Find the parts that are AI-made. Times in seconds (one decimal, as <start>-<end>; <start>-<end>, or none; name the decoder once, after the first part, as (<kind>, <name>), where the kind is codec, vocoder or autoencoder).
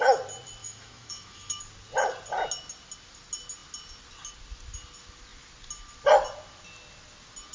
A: 0.6-1.6 (autoencoder, DAC-VAE)